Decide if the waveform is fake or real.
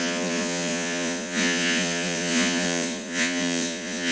fake